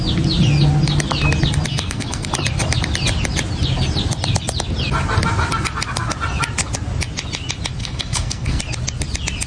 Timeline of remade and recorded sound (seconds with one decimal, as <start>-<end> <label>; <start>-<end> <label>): 0.0-1.7 recorded; 1.7-2.3 remade; 2.3-7.8 recorded; 7.8-8.6 remade; 8.6-9.5 recorded